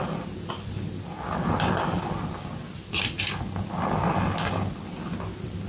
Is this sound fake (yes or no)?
no